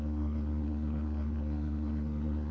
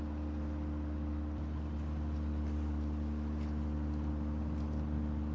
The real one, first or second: second